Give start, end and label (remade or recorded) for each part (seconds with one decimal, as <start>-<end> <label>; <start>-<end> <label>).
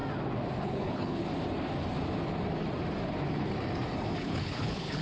0.0-0.6 recorded; 0.6-1.2 remade; 1.2-4.2 recorded; 4.2-5.0 remade